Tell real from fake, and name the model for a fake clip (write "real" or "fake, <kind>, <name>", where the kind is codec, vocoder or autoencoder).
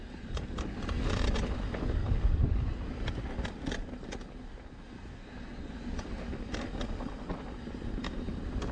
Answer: real